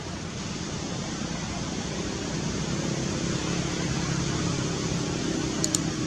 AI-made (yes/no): no